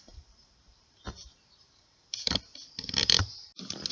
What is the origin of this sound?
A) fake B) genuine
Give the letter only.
A